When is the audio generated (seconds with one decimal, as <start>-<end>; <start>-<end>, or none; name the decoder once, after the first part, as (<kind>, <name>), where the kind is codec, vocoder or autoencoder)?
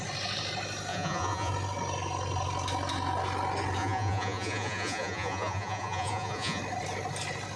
0.9-1.5 (vocoder, Vocos); 3.8-6.6